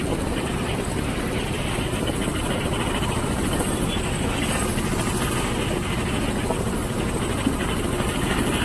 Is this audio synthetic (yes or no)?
no